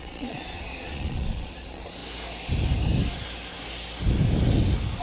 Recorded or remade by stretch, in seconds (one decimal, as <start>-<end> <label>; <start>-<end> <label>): 0.0-2.0 remade; 2.0-5.0 recorded